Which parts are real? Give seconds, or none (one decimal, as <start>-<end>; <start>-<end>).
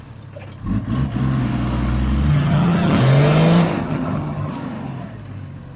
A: 0.0-2.3; 3.0-3.8; 4.5-5.8